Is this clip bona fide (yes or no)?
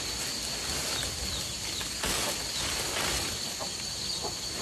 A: yes